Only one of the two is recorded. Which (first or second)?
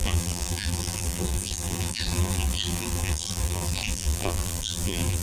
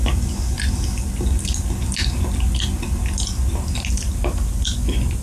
second